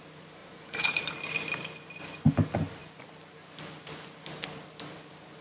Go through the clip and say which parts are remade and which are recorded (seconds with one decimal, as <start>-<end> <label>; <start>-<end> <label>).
0.0-0.4 recorded; 0.4-1.1 remade; 1.1-5.4 recorded